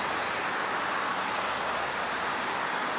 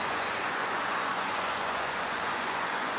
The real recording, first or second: first